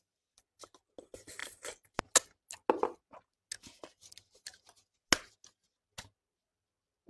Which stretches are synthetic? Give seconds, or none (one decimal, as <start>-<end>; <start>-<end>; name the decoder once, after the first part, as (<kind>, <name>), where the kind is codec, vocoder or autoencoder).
none